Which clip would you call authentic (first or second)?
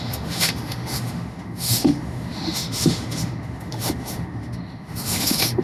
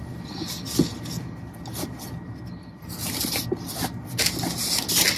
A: second